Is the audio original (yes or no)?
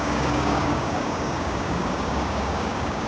no